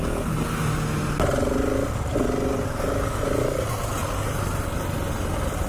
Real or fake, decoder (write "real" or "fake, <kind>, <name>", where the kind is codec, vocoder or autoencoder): real